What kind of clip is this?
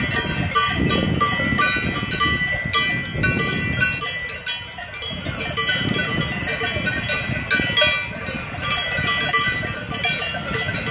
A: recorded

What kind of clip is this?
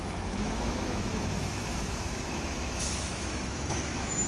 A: remade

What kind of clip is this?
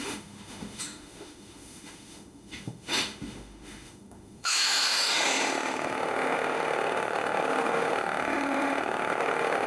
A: remade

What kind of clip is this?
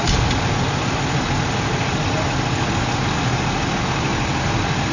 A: recorded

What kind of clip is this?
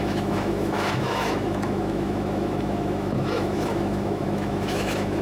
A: remade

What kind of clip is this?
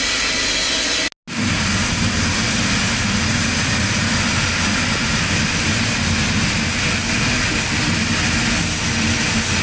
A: recorded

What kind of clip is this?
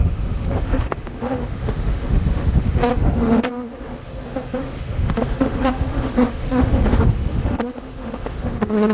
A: remade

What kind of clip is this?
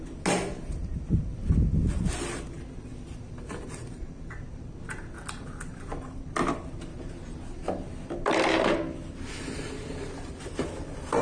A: recorded